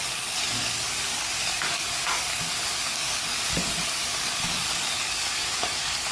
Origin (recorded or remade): remade